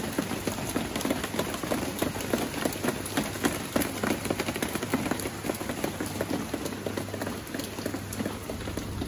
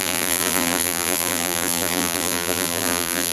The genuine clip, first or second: first